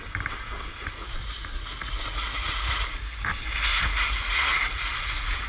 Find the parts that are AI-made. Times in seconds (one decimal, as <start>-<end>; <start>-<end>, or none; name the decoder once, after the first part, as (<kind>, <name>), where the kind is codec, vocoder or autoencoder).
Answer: 0.7-3.3 (vocoder, Vocos); 3.7-5.5